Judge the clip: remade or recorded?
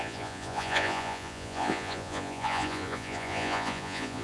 remade